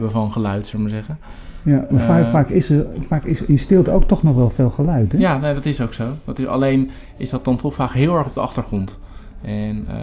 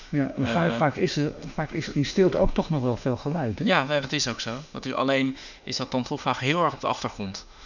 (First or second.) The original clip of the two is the first